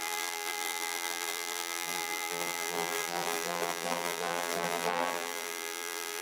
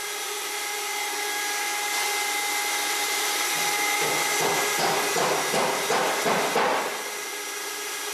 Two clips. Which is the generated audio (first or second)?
first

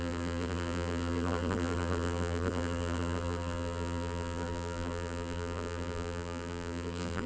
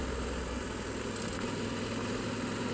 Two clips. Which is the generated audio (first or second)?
first